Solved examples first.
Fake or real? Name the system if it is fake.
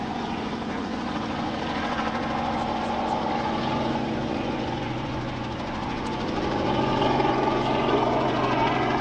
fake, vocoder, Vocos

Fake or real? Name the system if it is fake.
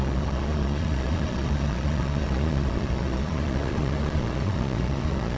fake, vocoder, Vocos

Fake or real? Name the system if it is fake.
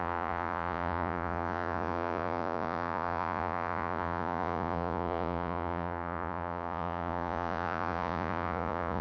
fake, vocoder, Vocos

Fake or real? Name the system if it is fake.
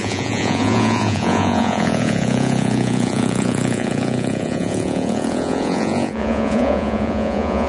fake, vocoder, Vocos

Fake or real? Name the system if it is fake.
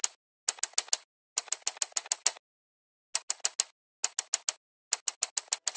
real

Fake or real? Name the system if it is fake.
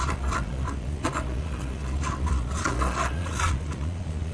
fake, vocoder, Vocos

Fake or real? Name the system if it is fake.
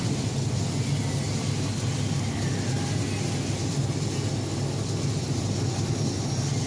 real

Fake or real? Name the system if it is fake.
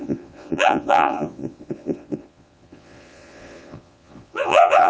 fake, vocoder, Vocos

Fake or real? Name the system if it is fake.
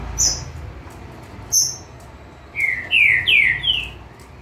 real